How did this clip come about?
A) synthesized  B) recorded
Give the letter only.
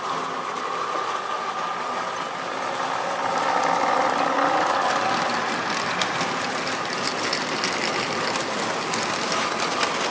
B